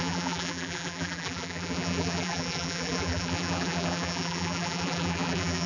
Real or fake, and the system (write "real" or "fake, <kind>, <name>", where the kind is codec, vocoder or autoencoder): fake, vocoder, BigVGAN v2